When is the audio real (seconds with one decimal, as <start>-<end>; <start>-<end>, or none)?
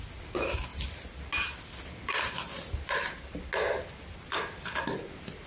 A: 0.0-5.5